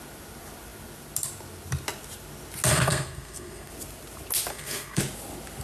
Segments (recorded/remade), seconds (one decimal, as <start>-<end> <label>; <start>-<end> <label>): 0.0-2.7 recorded; 2.7-3.7 remade; 3.7-4.5 recorded; 4.5-5.0 remade; 5.0-5.6 recorded